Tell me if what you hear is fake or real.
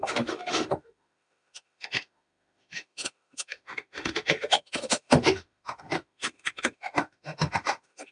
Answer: fake